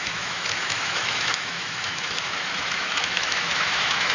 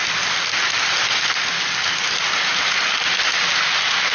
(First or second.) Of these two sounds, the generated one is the first